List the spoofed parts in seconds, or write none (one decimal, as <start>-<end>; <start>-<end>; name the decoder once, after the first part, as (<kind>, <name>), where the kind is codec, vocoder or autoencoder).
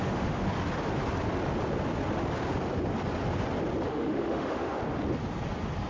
0.0-0.4 (autoencoder, DAC-VAE); 3.9-4.8